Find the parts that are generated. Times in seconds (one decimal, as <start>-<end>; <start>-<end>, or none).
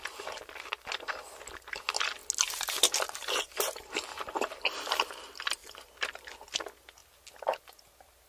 none